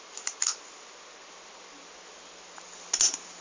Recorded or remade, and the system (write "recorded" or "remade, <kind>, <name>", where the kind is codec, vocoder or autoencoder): recorded